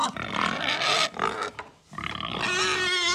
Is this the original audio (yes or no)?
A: yes